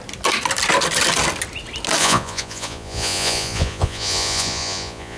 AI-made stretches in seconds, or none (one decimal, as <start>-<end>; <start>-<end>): 2.0-5.2